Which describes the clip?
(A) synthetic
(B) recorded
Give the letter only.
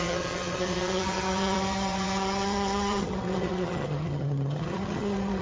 A